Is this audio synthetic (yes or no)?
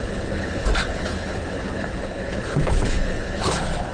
yes